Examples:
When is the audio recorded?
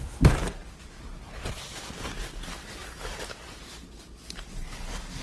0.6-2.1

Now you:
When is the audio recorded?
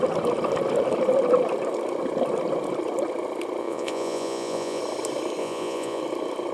0.0-3.6; 4.8-5.4; 6.0-6.5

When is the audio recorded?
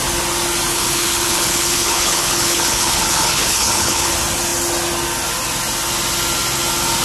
0.0-0.7; 4.1-7.0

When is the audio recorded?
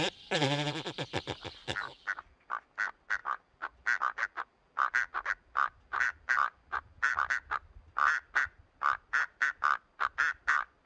0.0-1.6; 2.4-3.2; 7.2-10.9